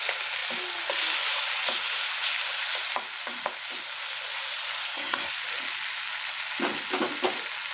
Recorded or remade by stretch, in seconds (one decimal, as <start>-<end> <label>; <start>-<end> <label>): 0.0-4.8 recorded; 4.8-5.3 remade; 5.3-7.7 recorded

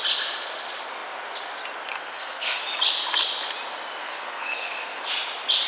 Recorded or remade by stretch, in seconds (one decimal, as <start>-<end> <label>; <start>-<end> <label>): 0.0-1.9 recorded; 1.9-2.6 remade; 2.6-4.0 recorded; 4.0-5.0 remade; 5.0-5.7 recorded

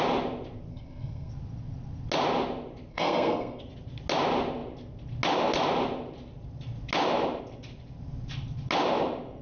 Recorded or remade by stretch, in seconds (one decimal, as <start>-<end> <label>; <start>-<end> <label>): 0.0-0.7 recorded; 0.7-1.3 remade; 1.3-2.9 recorded; 2.9-3.6 remade; 3.6-9.4 recorded

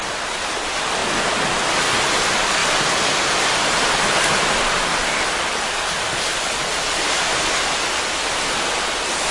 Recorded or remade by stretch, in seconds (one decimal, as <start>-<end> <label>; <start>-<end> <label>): 0.0-9.3 recorded

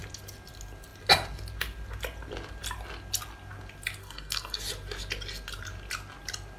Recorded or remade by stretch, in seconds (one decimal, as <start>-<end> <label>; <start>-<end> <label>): 0.0-4.0 recorded; 4.0-4.6 remade; 4.6-6.6 recorded